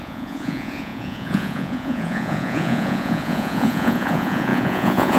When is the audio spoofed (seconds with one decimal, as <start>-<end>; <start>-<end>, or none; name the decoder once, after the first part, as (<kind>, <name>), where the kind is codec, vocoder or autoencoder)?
0.0-5.2 (vocoder, Vocos)